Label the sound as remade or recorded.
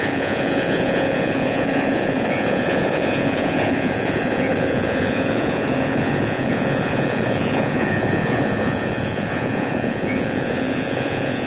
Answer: remade